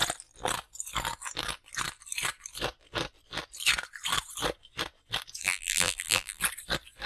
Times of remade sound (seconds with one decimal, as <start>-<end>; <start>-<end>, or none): 5.4-6.4